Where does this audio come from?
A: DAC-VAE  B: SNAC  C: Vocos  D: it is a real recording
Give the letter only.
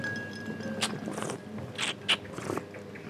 D